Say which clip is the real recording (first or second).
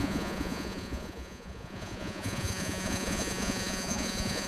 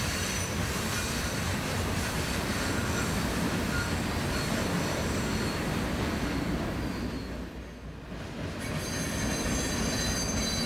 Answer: second